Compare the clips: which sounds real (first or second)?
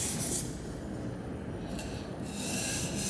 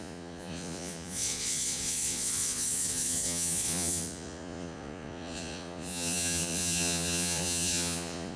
first